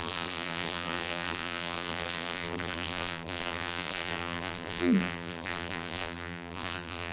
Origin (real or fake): fake